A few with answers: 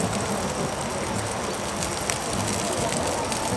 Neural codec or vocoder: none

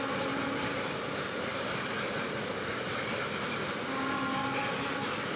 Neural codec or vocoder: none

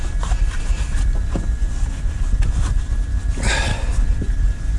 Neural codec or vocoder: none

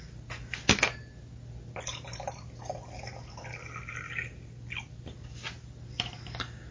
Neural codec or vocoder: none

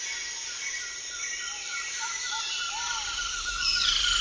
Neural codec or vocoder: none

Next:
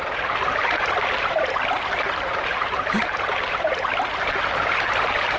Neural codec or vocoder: none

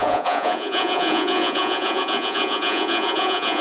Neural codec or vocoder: vocoder, Vocos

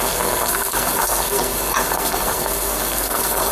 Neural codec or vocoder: codec, SNAC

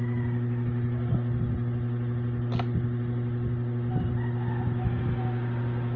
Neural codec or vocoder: none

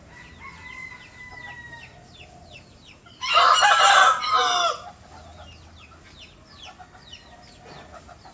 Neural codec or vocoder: none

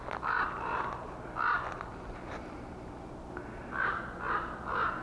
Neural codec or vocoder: none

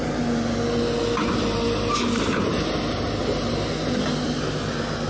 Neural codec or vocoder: none